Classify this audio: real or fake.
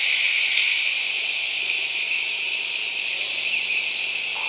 real